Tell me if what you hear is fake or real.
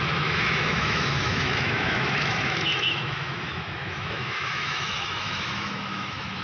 fake